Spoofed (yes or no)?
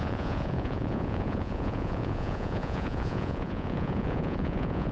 yes